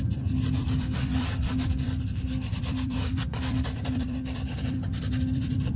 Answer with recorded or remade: remade